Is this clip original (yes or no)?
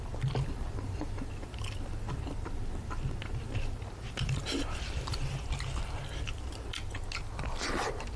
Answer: yes